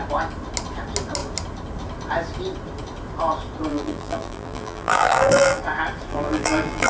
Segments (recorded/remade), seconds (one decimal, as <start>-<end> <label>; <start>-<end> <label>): 0.0-3.7 recorded; 3.7-5.6 remade; 5.6-6.1 recorded; 6.1-6.9 remade